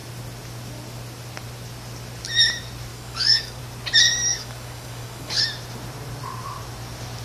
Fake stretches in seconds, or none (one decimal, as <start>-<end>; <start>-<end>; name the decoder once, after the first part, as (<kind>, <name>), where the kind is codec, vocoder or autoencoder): 2.9-3.6 (codec, DAC); 4.3-5.4